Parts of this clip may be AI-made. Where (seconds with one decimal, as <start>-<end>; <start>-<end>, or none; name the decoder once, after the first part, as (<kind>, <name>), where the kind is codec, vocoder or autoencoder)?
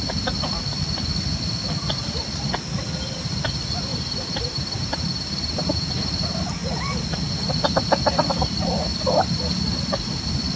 3.9-5.9 (vocoder, BigVGAN v2)